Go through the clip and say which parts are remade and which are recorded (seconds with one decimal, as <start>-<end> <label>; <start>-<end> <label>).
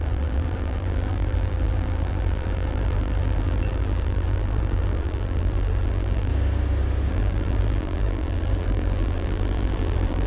0.0-6.3 remade; 6.3-7.1 recorded; 7.1-10.3 remade